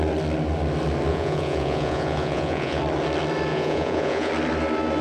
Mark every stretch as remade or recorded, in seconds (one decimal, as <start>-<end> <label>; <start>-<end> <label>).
0.0-1.1 recorded; 1.1-2.8 remade; 2.8-3.5 recorded; 3.5-4.3 remade; 4.3-5.0 recorded